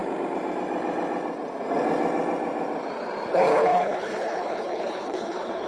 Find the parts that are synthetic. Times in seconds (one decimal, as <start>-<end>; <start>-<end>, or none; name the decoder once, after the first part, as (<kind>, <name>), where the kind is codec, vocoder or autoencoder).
3.3-5.7 (codec, HILCodec)